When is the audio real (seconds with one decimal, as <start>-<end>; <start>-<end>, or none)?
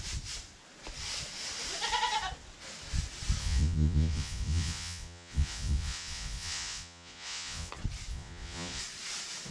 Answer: 0.0-3.4; 7.7-8.1; 8.8-9.5